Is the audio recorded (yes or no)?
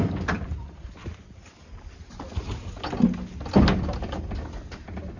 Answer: yes